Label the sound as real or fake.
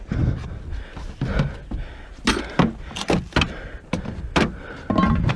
real